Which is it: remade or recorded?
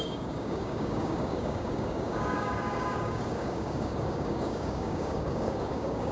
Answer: remade